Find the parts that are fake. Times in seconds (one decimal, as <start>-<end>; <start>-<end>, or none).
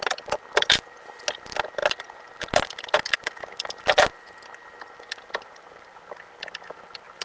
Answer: none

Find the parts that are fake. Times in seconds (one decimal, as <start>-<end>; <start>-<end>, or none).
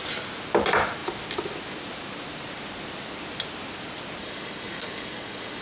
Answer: 4.2-5.6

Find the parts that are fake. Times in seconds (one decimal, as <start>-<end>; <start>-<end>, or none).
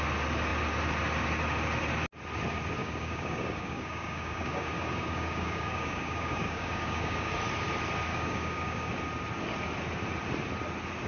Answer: 2.8-7.3; 8.1-8.9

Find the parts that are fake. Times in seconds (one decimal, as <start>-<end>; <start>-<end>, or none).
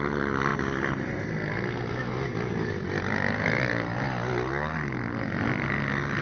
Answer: none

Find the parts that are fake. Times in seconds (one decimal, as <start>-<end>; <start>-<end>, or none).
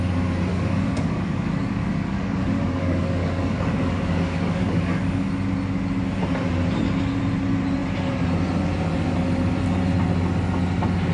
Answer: 0.5-5.3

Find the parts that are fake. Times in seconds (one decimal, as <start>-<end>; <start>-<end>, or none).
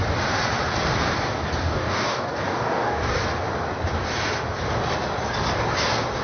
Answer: 1.6-3.2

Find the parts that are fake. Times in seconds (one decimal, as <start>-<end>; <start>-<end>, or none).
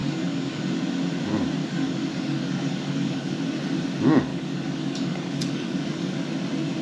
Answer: 0.0-0.6; 1.6-3.4; 4.3-6.1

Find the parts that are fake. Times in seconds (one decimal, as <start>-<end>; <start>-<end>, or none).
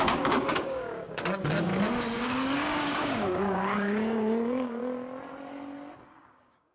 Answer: 0.0-1.7; 2.2-4.8; 6.2-6.7